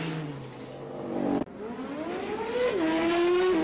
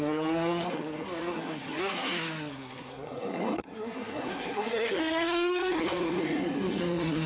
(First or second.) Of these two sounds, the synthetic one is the second